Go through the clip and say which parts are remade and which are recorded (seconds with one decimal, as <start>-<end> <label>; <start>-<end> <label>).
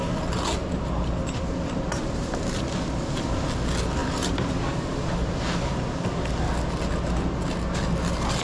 0.0-0.6 recorded; 0.6-2.2 remade; 2.2-8.4 recorded